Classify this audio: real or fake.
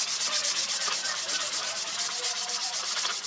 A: fake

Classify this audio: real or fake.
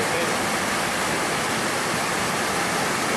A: real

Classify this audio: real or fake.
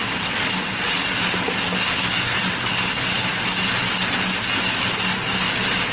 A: real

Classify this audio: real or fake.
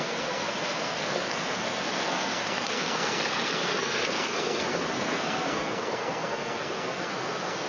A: fake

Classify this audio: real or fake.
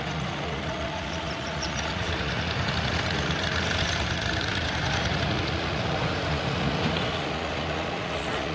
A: fake